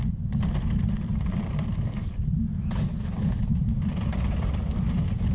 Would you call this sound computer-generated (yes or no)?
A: no